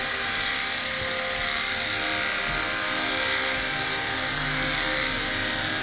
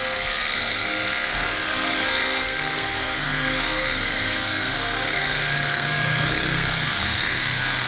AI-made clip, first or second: second